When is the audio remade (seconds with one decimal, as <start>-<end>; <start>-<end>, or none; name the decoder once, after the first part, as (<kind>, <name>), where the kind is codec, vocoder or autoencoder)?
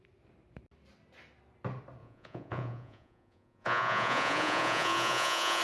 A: 2.0-5.6 (vocoder, Vocos)